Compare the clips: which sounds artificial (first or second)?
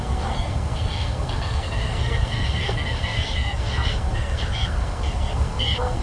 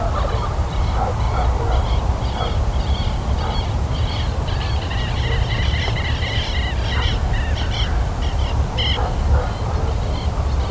first